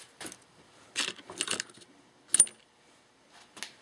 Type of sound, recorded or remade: recorded